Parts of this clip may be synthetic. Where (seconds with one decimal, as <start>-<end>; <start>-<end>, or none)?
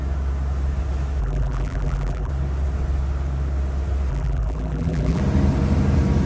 1.2-2.3; 4.1-5.2